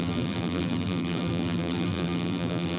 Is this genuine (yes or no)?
no